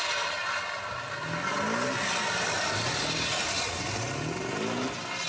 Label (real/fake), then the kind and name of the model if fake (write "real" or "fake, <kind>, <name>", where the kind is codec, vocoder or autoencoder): real